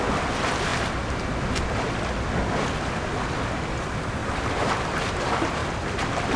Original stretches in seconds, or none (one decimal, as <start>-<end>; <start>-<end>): 0.0-4.2; 5.1-5.6